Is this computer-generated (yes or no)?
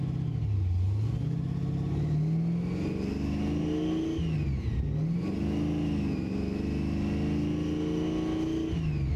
no